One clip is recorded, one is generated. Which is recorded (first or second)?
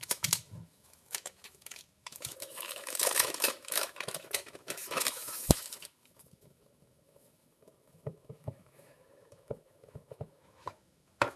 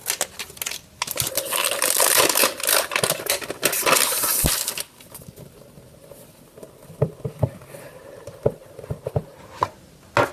second